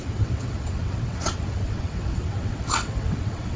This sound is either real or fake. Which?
fake